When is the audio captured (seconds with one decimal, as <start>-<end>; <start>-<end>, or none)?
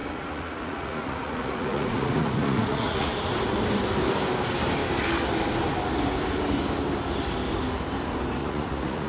3.1-8.4